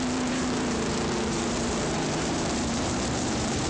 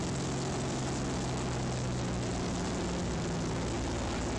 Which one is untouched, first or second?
second